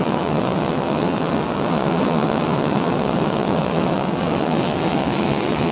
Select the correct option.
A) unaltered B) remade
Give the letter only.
B